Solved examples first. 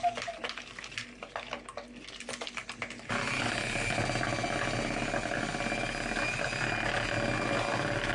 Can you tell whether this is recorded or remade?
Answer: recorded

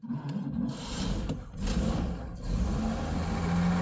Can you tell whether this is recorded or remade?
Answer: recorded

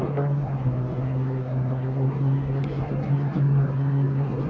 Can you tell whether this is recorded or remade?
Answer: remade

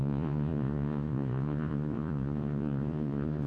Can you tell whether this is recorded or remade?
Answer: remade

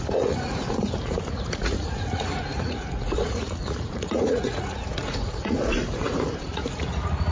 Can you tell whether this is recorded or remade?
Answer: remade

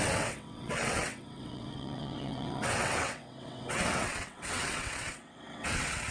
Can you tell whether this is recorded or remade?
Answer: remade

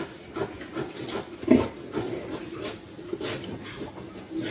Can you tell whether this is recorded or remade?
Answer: recorded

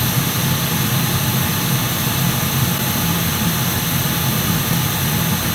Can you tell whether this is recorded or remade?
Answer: recorded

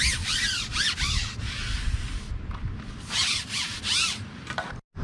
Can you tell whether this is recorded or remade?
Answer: recorded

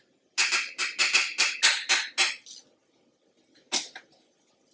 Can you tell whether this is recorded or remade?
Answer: recorded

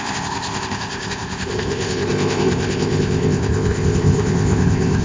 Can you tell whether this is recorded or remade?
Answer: remade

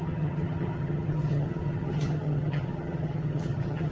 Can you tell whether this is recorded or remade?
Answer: remade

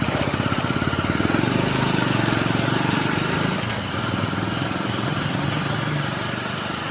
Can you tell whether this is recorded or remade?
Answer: recorded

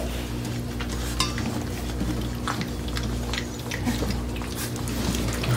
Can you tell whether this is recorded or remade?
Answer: recorded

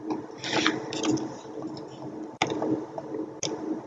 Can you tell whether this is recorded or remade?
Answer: recorded